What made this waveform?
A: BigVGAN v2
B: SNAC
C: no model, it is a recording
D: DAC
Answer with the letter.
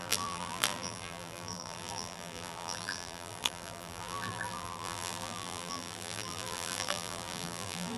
A